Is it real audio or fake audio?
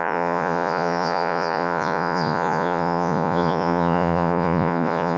fake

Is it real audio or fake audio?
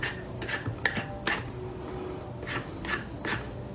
real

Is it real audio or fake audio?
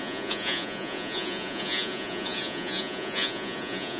fake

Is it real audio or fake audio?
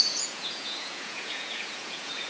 fake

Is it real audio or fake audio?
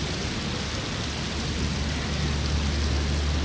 real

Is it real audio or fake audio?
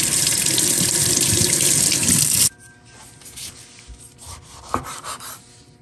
real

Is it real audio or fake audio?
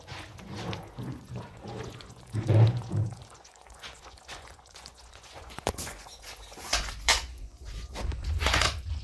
fake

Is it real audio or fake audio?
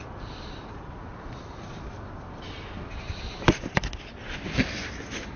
real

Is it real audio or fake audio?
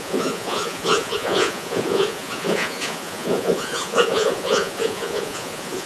fake